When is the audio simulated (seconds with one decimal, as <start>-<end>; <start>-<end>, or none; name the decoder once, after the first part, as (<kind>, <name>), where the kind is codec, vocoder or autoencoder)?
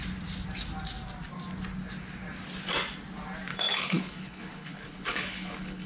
3.5-5.9 (codec, HILCodec)